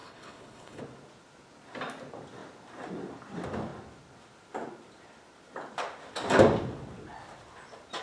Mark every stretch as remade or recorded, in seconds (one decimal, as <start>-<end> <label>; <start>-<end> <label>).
0.0-0.8 remade; 0.8-8.0 recorded